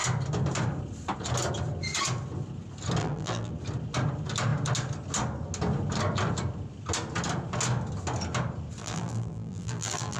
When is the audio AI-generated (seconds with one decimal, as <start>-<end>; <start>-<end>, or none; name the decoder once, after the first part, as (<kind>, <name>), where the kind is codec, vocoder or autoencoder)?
3.0-3.5 (vocoder, BigVGAN v2); 8.8-10.2